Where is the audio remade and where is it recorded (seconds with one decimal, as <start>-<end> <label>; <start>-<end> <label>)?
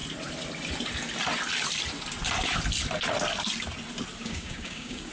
0.0-4.2 recorded; 4.2-5.1 remade